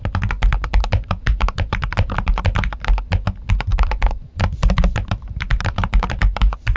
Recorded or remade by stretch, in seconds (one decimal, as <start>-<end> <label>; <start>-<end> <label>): 0.0-0.5 recorded; 0.5-2.4 remade; 2.4-3.7 recorded; 3.7-6.8 remade